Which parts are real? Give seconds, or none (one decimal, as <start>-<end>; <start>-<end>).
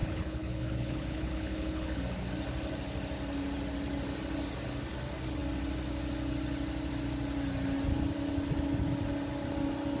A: 2.0-10.0